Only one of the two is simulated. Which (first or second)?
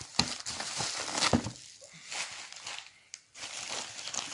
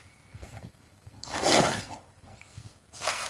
second